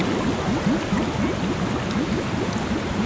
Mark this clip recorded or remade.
recorded